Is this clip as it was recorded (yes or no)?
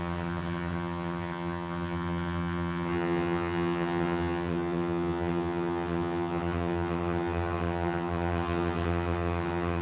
no